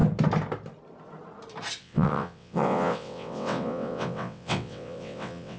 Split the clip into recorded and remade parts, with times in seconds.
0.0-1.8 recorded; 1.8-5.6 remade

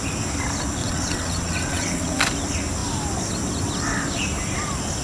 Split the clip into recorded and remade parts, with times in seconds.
0.0-0.8 recorded; 0.8-2.2 remade; 2.2-5.0 recorded

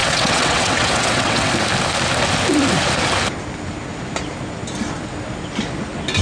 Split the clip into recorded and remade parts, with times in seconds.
0.0-1.5 remade; 1.5-6.2 recorded

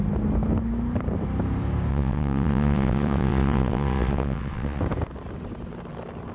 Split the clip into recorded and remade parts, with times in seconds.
0.0-1.9 recorded; 1.9-4.8 remade; 4.8-6.3 recorded

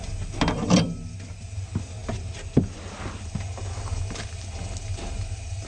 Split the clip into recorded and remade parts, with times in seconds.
0.0-5.7 recorded

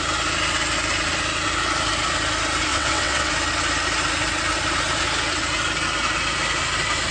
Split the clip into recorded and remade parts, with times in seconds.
0.0-2.7 recorded; 2.7-3.3 remade; 3.3-7.1 recorded